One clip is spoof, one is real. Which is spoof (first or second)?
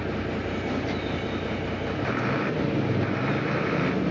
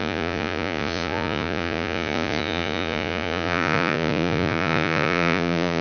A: second